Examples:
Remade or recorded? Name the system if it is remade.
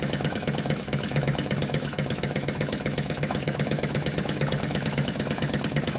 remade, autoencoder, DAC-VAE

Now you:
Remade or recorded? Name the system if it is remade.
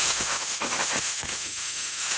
remade, autoencoder, DAC-VAE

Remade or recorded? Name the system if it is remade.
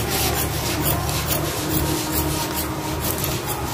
recorded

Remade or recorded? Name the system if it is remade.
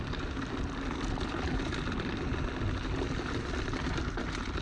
recorded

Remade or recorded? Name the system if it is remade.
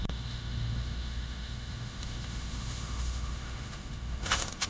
remade, autoencoder, DAC-VAE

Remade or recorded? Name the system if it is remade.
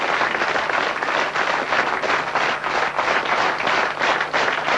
recorded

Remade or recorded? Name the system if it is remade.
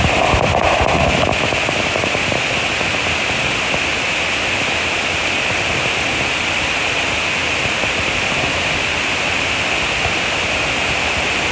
recorded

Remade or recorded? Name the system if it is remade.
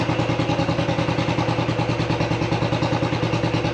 recorded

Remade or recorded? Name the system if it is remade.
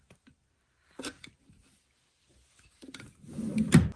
recorded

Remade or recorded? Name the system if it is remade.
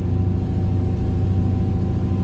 recorded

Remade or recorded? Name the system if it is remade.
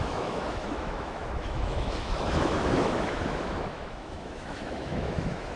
remade, autoencoder, DAC-VAE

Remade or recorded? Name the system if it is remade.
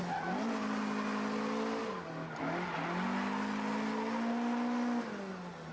recorded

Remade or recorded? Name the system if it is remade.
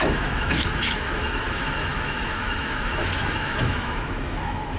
remade, autoencoder, DAC-VAE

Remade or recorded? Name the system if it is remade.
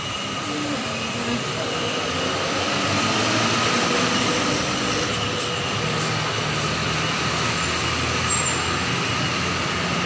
recorded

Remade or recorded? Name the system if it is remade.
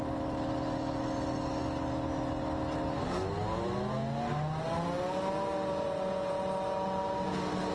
recorded